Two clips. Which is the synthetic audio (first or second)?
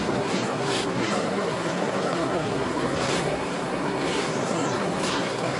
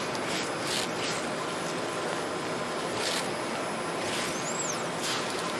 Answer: first